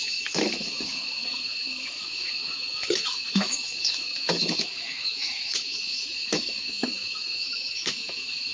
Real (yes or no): no